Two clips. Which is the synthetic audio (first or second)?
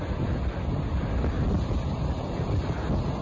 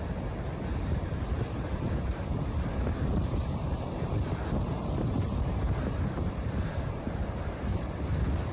second